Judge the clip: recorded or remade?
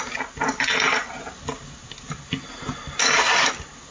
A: recorded